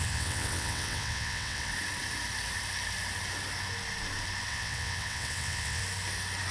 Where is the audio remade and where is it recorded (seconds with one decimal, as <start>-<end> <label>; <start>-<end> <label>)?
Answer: 0.0-1.7 remade; 1.7-4.5 recorded; 4.5-5.8 remade; 5.8-6.5 recorded